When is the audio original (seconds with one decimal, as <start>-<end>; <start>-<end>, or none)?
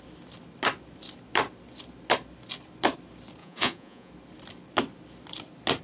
0.0-3.4; 4.1-5.8